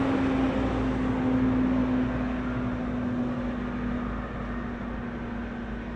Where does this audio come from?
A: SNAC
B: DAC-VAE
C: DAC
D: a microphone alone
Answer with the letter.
D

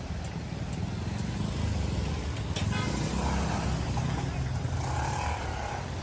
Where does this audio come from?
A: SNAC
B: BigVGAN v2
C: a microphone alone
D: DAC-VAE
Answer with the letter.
C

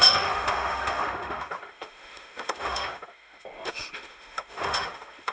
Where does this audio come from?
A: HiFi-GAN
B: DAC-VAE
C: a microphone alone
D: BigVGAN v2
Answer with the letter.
B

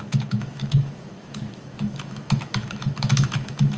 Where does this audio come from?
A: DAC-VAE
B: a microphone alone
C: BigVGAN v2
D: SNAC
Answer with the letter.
A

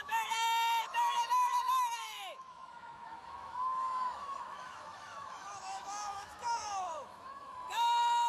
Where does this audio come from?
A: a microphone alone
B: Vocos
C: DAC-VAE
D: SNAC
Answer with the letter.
C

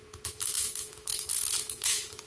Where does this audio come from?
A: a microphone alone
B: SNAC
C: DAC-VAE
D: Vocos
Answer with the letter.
C